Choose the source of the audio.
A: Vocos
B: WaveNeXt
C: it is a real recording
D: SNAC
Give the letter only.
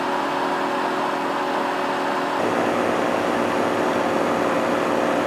C